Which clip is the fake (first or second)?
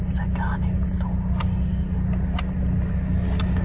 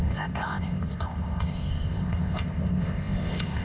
second